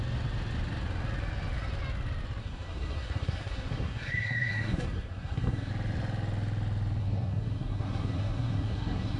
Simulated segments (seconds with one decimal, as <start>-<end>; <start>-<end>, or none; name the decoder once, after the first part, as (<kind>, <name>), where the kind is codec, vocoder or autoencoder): 2.4-5.7 (codec, SNAC); 7.0-9.2